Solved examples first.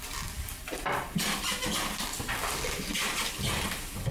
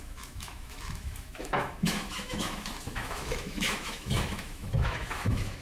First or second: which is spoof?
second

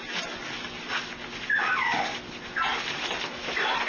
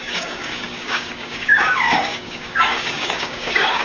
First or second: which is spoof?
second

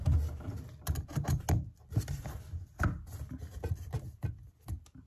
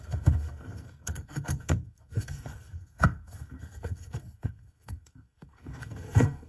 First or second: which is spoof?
second